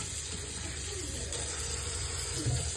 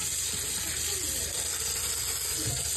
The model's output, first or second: first